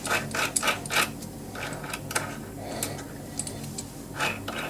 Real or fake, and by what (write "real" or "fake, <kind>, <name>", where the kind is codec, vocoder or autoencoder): real